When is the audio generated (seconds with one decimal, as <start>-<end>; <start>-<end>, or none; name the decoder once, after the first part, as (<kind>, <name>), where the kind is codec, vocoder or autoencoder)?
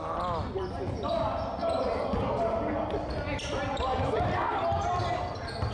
none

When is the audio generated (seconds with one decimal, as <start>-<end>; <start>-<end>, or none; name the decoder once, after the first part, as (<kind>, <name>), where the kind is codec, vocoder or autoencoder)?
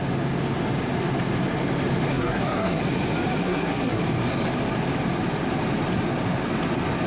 2.1-2.8 (codec, SNAC); 3.4-4.0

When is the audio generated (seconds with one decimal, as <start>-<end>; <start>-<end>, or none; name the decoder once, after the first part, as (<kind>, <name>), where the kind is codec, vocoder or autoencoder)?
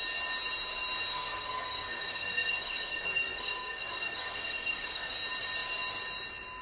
1.1-5.1 (codec, SNAC)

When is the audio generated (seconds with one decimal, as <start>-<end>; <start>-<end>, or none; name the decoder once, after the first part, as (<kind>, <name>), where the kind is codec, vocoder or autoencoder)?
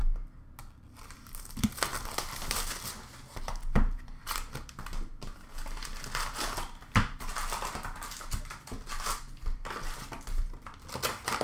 none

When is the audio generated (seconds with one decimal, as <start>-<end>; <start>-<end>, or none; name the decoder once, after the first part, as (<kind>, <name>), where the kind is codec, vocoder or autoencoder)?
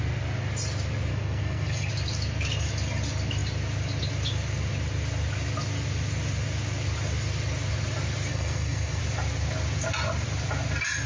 1.1-1.9 (codec, SNAC); 8.3-9.0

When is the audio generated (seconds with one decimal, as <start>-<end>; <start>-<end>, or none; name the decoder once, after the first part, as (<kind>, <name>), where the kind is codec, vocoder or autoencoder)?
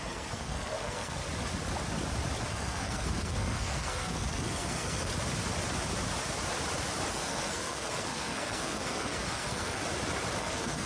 0.0-1.2 (codec, SNAC); 2.5-5.1; 7.1-9.8; 10.4-10.9